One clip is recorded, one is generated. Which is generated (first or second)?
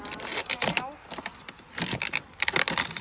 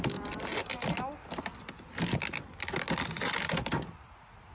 first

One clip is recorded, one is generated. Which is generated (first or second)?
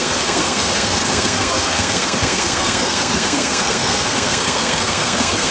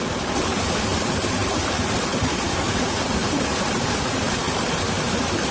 first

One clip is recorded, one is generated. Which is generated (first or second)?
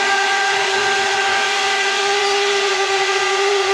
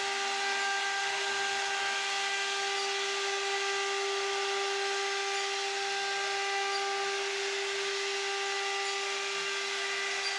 first